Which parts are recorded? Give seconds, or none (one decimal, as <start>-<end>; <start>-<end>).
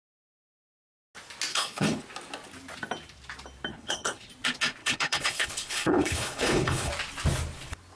0.0-1.5; 2.0-3.7; 4.3-4.8; 6.9-8.0